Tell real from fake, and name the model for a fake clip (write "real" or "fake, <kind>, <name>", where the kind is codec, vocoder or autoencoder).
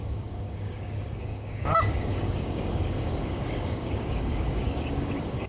fake, codec, DAC